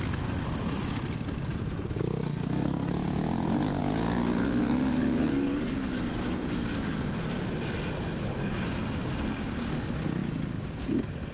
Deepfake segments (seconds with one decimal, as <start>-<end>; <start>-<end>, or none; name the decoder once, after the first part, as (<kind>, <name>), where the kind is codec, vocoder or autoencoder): 2.2-2.9 (codec, SNAC)